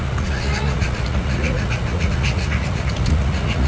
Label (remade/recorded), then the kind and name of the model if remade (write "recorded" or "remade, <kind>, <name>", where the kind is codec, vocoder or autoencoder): remade, vocoder, Vocos